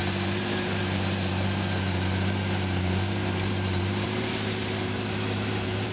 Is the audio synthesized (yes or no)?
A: yes